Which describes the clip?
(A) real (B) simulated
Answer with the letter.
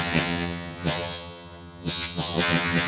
B